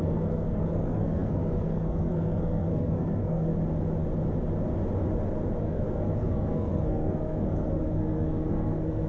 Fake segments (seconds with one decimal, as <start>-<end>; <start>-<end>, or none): 0.0-3.5; 5.6-9.1

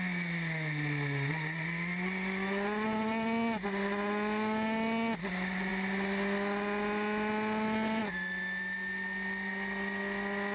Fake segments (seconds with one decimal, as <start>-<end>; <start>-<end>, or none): none

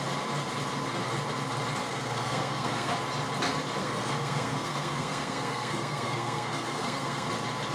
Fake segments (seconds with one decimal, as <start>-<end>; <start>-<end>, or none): 1.8-2.9; 3.8-7.3

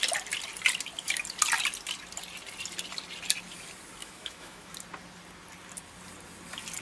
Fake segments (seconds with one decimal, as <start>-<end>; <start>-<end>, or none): 4.0-4.7

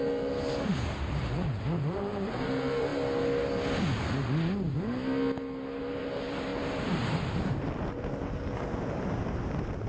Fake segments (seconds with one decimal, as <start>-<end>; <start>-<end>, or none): 0.0-2.9; 5.8-9.9

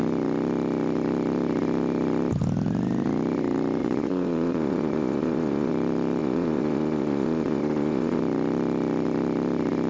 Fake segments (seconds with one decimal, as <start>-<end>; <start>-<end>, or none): 3.8-5.7; 6.2-8.2

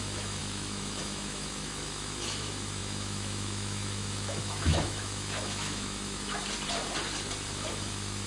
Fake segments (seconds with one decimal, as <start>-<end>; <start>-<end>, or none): 0.0-6.4; 7.7-8.3